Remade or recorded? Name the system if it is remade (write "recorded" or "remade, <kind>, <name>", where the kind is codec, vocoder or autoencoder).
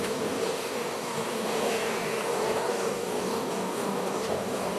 remade, codec, DAC